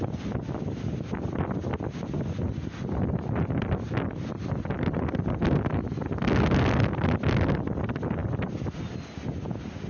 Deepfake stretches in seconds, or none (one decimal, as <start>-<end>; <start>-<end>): none